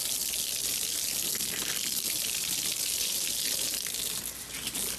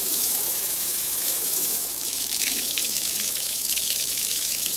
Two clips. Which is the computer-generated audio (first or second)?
second